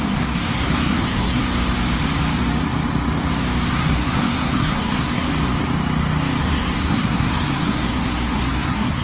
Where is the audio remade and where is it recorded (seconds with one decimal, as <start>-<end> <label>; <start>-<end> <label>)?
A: 0.0-1.4 remade; 1.4-3.7 recorded; 3.7-5.3 remade; 5.3-6.4 recorded; 6.4-9.0 remade